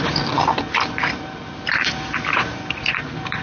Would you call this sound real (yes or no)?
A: no